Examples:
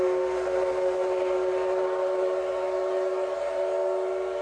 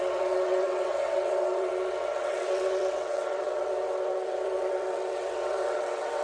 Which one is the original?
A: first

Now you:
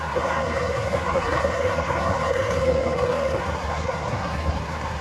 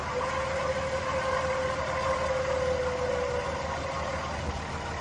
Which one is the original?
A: second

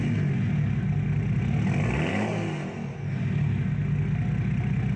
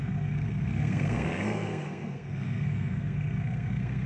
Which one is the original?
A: first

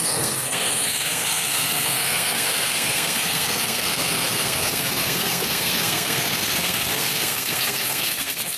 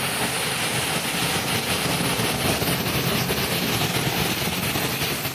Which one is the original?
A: second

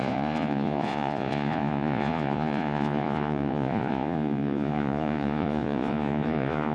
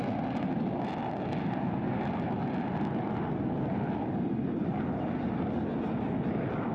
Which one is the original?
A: second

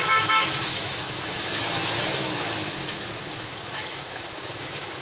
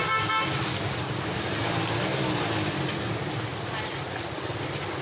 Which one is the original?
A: second